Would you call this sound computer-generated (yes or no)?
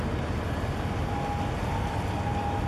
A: no